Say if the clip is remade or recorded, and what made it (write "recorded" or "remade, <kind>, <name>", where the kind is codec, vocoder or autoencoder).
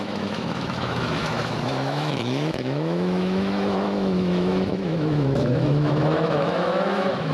remade, autoencoder, DAC-VAE